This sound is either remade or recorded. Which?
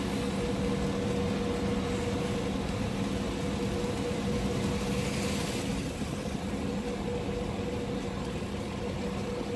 recorded